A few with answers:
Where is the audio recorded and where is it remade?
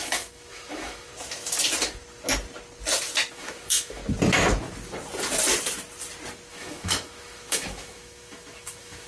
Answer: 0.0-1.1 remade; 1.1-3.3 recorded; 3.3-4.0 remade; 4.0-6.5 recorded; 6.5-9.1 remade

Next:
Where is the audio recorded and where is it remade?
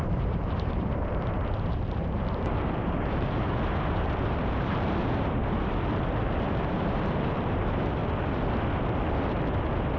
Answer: 0.0-5.4 remade; 5.4-6.5 recorded; 6.5-8.0 remade; 8.0-10.0 recorded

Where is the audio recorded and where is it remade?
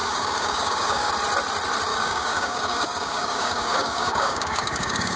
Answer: 0.0-1.1 remade; 1.1-1.9 recorded; 1.9-5.2 remade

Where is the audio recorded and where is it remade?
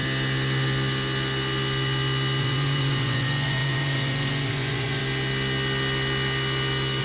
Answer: 0.0-2.4 recorded; 2.4-5.0 remade; 5.0-7.0 recorded